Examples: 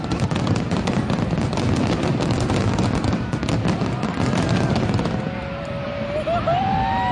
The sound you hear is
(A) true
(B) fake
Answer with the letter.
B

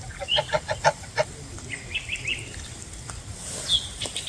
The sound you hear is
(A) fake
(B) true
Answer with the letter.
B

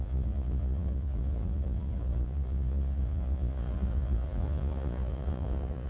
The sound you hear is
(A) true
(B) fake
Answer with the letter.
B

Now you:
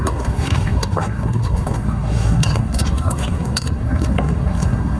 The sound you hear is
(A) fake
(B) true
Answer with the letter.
A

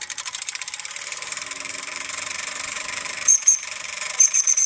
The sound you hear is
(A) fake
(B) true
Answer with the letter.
A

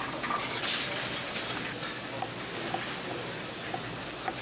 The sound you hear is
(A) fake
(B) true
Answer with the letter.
B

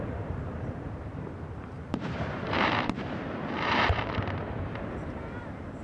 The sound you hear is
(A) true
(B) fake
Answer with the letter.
B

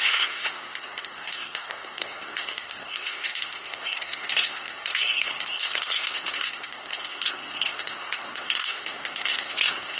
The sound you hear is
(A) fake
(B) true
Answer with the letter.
A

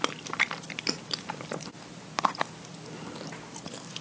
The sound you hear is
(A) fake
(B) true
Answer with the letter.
B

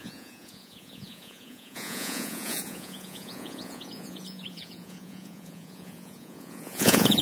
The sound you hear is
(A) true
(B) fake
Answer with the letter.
B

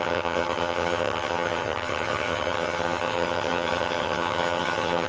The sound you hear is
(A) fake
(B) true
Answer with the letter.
A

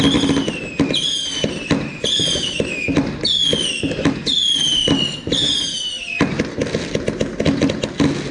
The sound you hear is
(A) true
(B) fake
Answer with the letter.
A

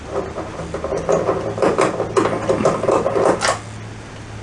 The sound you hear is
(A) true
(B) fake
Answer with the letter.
A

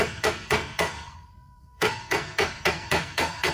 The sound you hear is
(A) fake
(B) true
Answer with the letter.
A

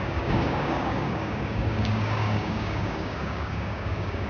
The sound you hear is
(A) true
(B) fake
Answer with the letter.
B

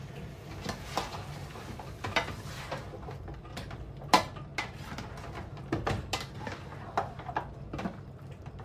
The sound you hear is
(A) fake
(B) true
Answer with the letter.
B